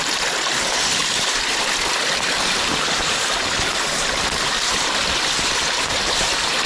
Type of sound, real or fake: real